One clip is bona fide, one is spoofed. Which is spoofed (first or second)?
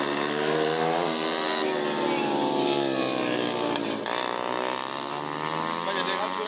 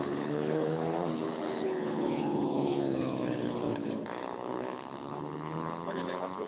second